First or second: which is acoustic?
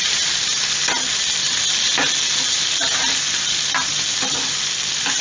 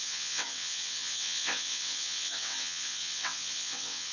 first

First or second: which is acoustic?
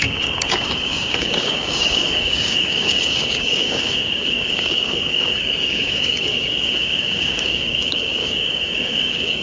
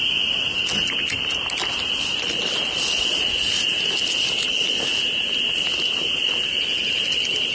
second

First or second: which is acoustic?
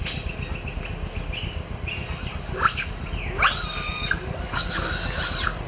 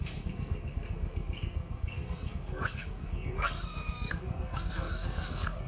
first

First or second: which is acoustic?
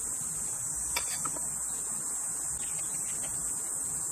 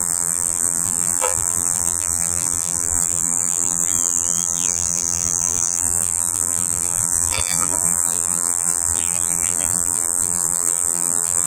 first